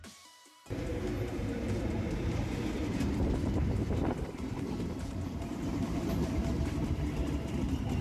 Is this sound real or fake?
fake